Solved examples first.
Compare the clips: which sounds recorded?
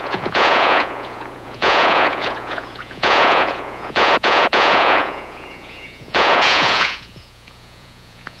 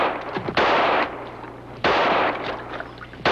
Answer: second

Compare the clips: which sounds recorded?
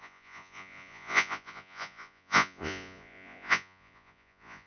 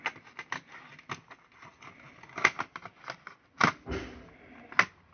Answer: second